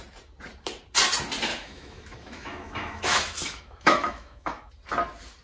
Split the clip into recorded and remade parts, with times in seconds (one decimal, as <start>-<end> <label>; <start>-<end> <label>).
0.0-1.5 recorded; 1.5-4.7 remade; 4.7-5.4 recorded